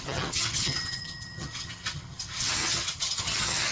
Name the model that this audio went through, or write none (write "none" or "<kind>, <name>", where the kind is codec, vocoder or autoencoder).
vocoder, HiFi-GAN